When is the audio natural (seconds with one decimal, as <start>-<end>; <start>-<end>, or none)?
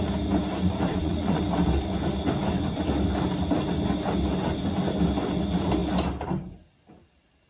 0.0-0.9; 1.4-7.5